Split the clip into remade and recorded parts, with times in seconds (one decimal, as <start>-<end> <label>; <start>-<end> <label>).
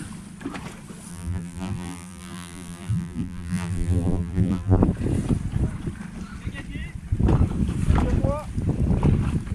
0.0-1.1 recorded; 1.1-4.8 remade; 4.8-9.5 recorded